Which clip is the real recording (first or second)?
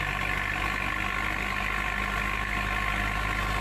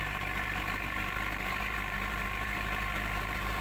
first